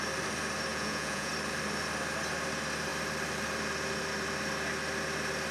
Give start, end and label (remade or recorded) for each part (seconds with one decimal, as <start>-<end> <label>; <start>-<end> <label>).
0.0-0.7 recorded; 0.7-1.3 remade; 1.3-5.5 recorded